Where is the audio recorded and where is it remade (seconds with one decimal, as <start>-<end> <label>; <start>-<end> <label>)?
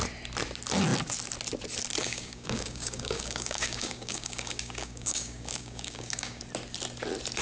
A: 0.0-2.0 recorded; 2.0-6.4 remade; 6.4-7.4 recorded